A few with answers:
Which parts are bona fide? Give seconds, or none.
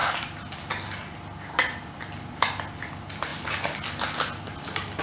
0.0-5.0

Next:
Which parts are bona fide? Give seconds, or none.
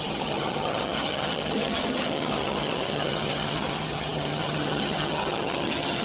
none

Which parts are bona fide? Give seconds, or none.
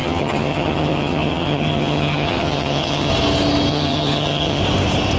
3.1-3.7; 4.6-5.2